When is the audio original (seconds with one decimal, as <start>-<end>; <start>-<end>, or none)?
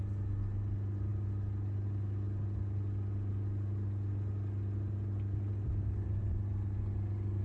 0.0-7.4